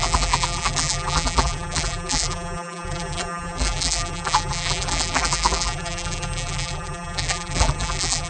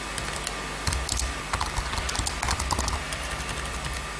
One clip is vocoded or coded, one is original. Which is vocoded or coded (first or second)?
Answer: first